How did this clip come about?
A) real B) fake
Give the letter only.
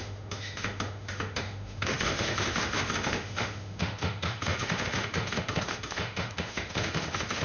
B